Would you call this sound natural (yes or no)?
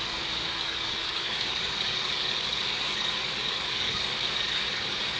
no